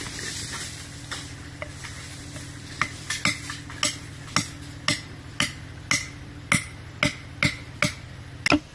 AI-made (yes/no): no